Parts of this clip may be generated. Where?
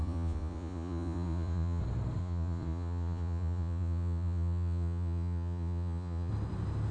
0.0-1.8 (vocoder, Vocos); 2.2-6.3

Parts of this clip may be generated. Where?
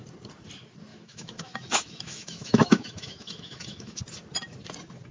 0.9-4.0 (autoencoder, DAC-VAE)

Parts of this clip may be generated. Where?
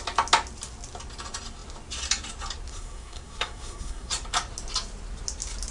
2.7-4.1 (codec, SNAC)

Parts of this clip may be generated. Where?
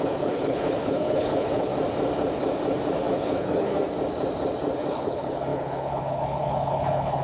0.0-1.7 (codec, HILCodec); 3.1-3.7; 4.9-7.2